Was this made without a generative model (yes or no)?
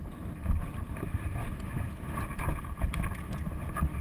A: yes